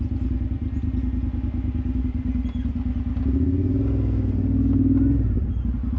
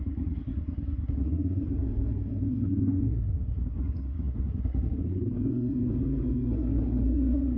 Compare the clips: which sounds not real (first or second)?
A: second